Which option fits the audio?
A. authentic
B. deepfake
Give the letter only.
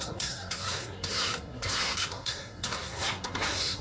B